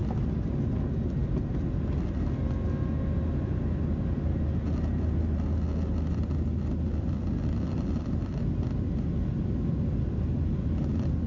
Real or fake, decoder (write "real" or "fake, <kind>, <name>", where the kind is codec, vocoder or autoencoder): real